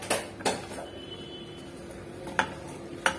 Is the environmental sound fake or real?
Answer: real